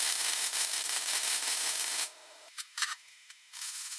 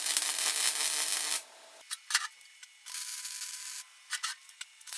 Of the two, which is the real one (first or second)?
second